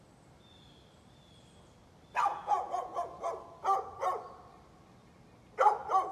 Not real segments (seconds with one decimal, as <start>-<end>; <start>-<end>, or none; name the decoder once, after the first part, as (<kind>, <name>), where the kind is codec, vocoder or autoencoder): 2.3-2.9 (vocoder, Vocos)